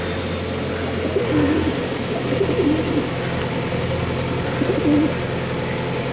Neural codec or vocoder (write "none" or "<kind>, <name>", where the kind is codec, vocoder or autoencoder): none